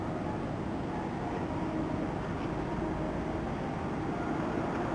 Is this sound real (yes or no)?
yes